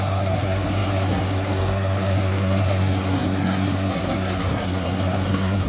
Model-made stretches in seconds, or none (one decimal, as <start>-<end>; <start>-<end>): 0.0-5.7